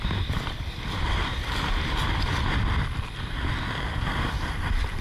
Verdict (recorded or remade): recorded